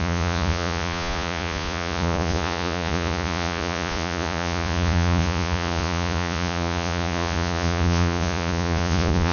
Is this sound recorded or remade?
remade